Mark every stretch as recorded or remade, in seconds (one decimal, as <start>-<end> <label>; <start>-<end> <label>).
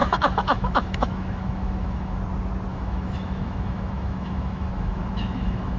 0.0-2.2 remade; 2.2-2.7 recorded; 2.7-5.8 remade